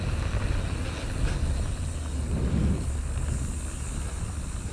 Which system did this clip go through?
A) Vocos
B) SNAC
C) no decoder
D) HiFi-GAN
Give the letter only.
C